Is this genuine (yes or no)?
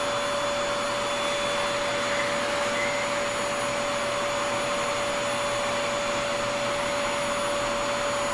yes